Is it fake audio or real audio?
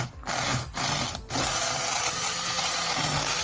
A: real